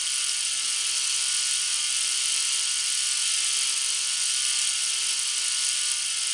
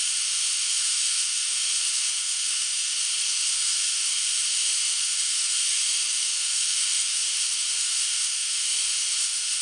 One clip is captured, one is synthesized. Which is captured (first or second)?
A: first